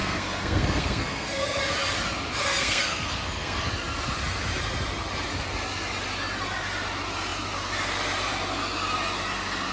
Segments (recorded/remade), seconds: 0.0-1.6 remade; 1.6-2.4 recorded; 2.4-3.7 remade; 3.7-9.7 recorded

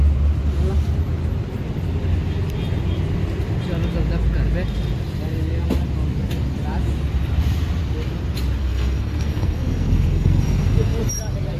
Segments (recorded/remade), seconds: 0.0-8.6 recorded; 8.6-11.0 remade; 11.0-11.6 recorded

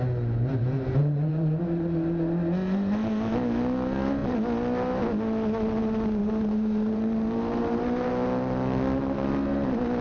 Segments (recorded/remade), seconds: 0.0-1.3 recorded; 1.3-1.9 remade; 1.9-6.2 recorded; 6.2-8.1 remade; 8.1-10.0 recorded

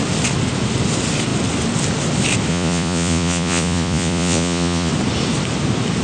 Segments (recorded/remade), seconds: 0.0-2.5 recorded; 2.5-4.9 remade; 4.9-6.0 recorded